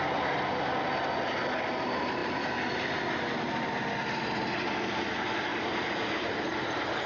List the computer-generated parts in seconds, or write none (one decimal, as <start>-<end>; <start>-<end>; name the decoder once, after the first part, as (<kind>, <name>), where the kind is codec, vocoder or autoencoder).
none